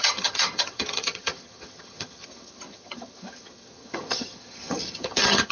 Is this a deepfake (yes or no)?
yes